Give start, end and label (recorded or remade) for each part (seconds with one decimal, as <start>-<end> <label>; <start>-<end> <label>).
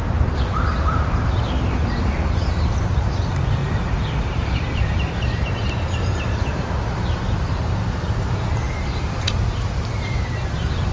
0.0-3.6 remade; 3.6-4.3 recorded; 4.3-10.9 remade